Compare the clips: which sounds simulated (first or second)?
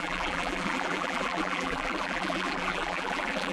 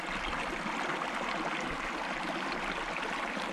first